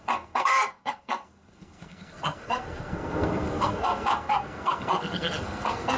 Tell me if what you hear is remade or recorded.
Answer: remade